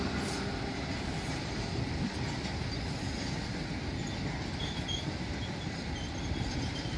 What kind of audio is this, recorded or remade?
recorded